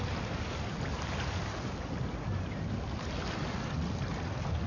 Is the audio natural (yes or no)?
yes